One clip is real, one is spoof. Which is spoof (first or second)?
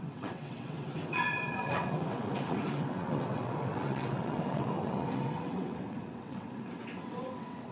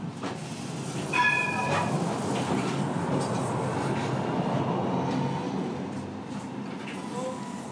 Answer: first